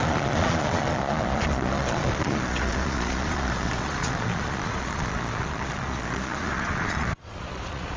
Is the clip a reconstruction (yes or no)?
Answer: yes